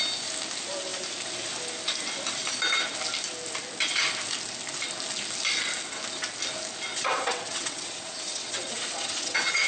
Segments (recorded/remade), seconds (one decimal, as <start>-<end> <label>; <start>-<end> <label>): 0.0-6.9 recorded; 6.9-9.7 remade